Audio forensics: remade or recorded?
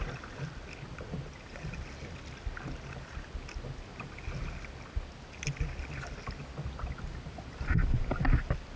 recorded